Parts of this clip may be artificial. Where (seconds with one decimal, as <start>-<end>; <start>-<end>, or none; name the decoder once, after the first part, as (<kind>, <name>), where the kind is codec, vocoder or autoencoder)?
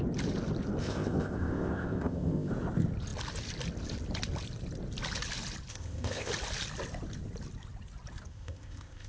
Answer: 0.8-2.5 (codec, ZipCodec); 5.7-6.3; 8.3-9.1